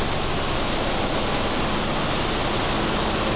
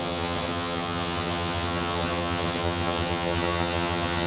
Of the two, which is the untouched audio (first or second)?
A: first